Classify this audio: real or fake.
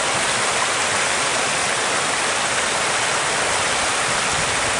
real